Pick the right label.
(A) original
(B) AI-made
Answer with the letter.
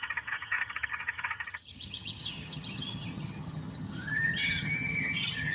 B